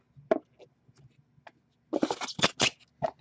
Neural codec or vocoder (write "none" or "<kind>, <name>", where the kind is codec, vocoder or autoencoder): none